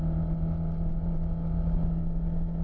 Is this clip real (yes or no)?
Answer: yes